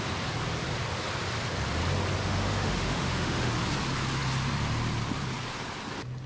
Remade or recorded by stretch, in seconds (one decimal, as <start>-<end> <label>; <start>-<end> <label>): 0.0-2.2 recorded; 2.2-3.5 remade; 3.5-6.3 recorded